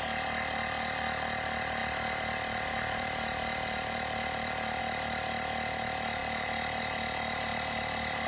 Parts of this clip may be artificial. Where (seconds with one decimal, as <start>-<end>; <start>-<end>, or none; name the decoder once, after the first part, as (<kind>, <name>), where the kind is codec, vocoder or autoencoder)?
1.8-4.8 (vocoder, BigVGAN v2); 6.2-6.8